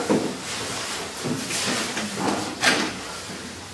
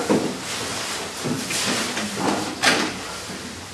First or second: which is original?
first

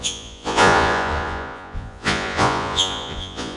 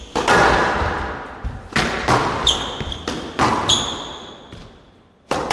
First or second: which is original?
second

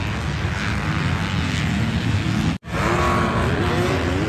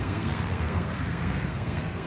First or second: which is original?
first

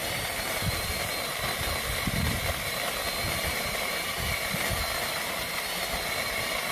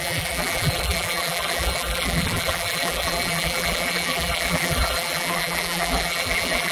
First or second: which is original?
first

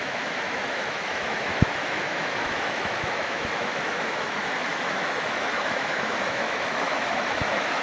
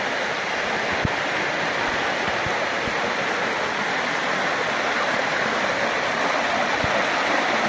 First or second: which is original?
second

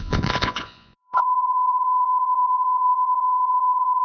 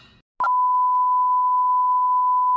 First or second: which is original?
second